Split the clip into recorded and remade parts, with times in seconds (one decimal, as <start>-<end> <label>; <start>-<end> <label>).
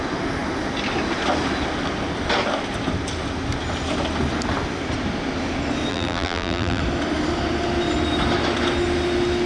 0.0-5.9 recorded; 5.9-6.8 remade; 6.8-9.5 recorded